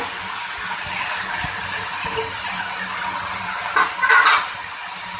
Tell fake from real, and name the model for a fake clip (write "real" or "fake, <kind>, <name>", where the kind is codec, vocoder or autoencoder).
real